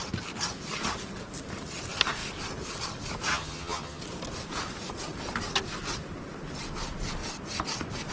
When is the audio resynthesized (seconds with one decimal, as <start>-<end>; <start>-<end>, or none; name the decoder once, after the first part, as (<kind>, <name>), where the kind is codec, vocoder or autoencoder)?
3.3-4.0 (vocoder, HiFi-GAN)